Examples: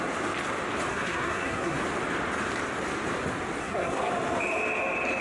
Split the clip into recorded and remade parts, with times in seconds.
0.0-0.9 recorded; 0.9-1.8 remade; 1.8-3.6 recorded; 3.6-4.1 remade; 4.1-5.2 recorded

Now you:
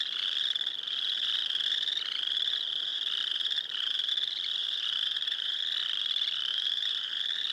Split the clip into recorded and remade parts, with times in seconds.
0.0-2.9 recorded; 2.9-4.1 remade; 4.1-4.6 recorded; 4.6-5.6 remade; 5.6-6.5 recorded; 6.5-7.1 remade; 7.1-7.5 recorded

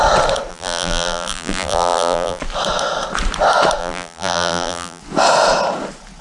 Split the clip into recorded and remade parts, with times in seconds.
0.0-0.5 recorded; 0.5-2.4 remade; 2.4-3.8 recorded; 3.8-5.0 remade; 5.0-6.2 recorded

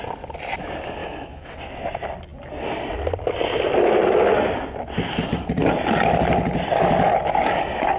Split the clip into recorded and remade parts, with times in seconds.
0.0-1.0 recorded; 1.0-1.6 remade; 1.6-8.0 recorded

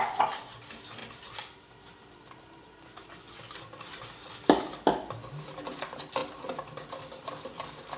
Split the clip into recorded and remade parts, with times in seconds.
0.0-1.0 recorded; 1.0-1.5 remade; 1.5-6.2 recorded; 6.2-6.9 remade; 6.9-8.0 recorded

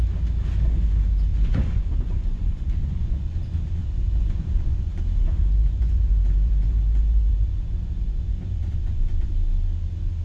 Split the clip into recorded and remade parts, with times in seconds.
0.0-1.3 recorded; 1.3-3.3 remade; 3.3-3.8 recorded; 3.8-5.0 remade; 5.0-5.4 recorded; 5.4-9.3 remade; 9.3-10.2 recorded

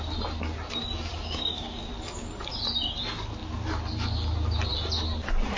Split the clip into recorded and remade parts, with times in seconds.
0.0-1.1 recorded; 1.1-1.9 remade; 1.9-5.6 recorded